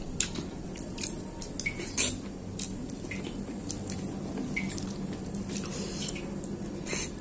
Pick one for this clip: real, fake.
real